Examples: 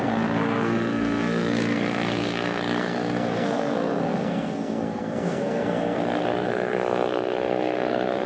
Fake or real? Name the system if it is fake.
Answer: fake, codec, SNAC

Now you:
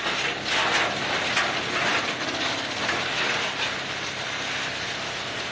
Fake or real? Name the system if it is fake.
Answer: real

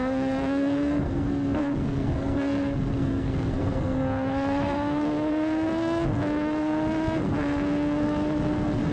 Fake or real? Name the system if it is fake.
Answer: fake, codec, SNAC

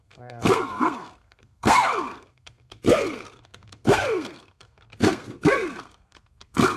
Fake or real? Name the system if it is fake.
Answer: fake, codec, SNAC